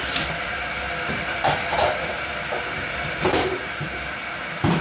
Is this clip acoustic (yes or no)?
no